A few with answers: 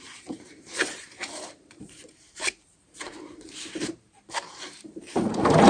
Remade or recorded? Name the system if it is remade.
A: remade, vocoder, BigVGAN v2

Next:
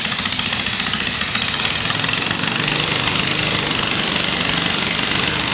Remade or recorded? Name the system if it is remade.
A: remade, vocoder, BigVGAN v2